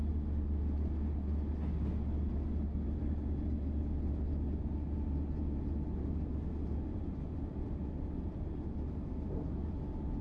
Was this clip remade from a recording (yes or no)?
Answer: no